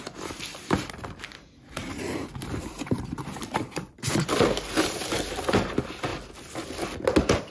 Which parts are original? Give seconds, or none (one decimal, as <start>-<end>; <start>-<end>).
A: 0.0-1.8; 5.1-7.5